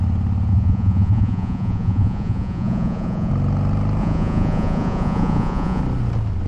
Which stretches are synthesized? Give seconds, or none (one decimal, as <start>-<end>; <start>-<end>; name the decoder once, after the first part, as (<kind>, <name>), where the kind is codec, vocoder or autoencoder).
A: 0.5-3.3 (vocoder, Vocos); 4.0-5.8